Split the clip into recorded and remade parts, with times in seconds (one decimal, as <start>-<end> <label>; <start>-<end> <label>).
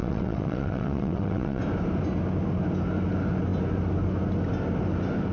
0.0-1.6 remade; 1.6-5.3 recorded